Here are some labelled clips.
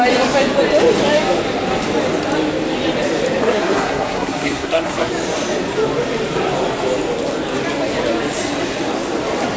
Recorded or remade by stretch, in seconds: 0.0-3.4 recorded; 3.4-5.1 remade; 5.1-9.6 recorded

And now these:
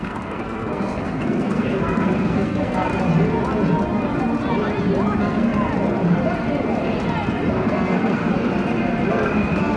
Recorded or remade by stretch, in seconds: 0.0-2.9 remade; 2.9-5.2 recorded; 5.2-5.7 remade; 5.7-7.5 recorded; 7.5-8.2 remade; 8.2-9.1 recorded; 9.1-9.8 remade